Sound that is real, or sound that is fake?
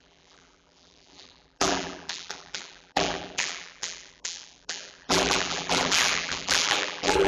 fake